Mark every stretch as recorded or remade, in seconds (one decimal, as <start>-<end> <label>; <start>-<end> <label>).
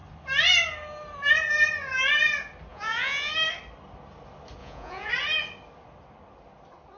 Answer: 0.0-2.7 recorded; 2.7-3.3 remade; 3.3-4.6 recorded; 4.6-5.1 remade; 5.1-7.0 recorded